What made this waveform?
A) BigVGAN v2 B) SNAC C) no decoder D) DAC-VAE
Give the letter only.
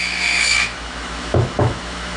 D